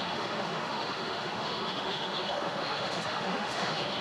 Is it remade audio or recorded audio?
remade